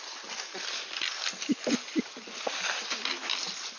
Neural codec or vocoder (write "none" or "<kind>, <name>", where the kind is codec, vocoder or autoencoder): none